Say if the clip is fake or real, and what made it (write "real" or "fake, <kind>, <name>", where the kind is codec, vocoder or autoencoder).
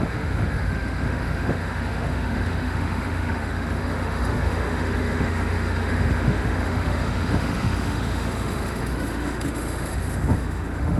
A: fake, autoencoder, DAC-VAE